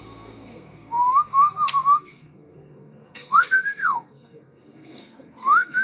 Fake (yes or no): yes